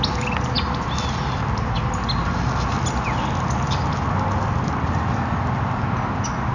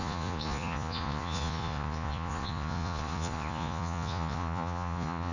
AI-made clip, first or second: second